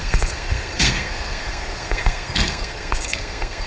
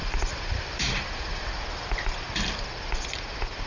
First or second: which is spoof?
first